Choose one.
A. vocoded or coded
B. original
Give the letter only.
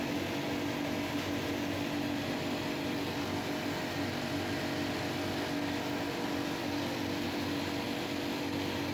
B